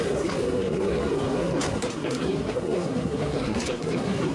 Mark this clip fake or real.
fake